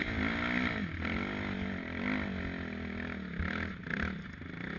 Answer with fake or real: real